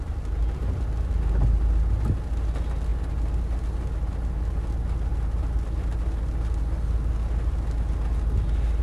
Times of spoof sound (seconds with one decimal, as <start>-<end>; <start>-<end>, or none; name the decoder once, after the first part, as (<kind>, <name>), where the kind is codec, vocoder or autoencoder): none